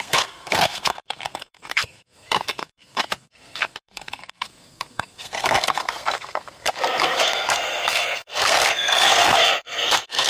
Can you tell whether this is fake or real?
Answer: fake